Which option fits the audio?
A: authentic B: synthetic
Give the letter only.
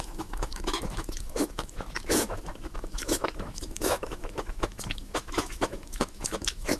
B